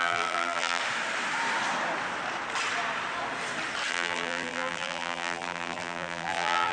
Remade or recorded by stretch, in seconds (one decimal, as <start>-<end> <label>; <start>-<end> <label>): 0.0-0.8 remade; 0.8-3.9 recorded; 3.9-6.7 remade